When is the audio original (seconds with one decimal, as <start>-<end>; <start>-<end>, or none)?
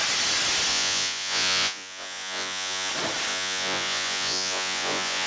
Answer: 0.0-0.7; 2.9-3.3